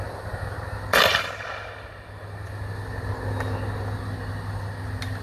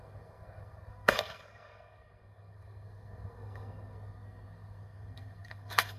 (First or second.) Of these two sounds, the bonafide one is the first